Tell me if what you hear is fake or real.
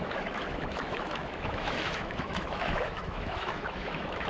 fake